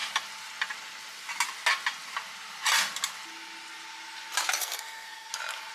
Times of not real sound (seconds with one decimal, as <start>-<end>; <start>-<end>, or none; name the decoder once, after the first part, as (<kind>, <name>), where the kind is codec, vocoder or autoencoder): 4.6-5.3 (codec, SNAC)